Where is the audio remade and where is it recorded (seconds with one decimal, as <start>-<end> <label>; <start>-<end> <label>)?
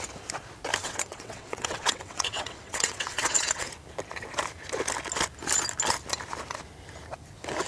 0.0-0.8 recorded; 0.8-3.7 remade; 3.7-7.7 recorded